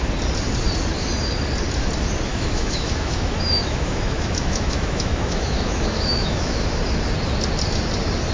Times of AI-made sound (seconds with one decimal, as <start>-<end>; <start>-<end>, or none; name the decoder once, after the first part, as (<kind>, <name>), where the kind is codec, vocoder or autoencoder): 2.3-6.8 (autoencoder, DAC-VAE)